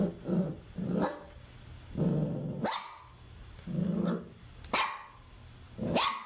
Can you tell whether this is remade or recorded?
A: recorded